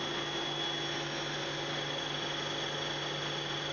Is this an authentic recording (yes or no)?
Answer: yes